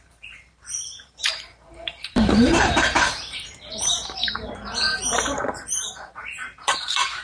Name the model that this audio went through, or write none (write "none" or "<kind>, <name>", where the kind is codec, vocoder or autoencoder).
vocoder, BigVGAN v2